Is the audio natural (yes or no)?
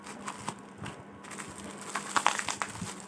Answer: yes